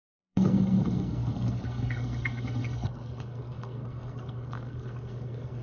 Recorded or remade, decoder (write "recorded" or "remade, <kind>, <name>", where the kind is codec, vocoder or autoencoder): remade, codec, SNAC